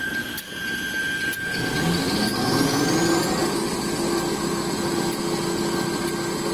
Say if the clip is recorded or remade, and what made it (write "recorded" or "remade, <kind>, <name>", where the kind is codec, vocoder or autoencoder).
recorded